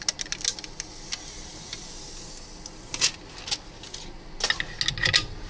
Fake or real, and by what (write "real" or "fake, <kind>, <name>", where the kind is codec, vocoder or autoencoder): real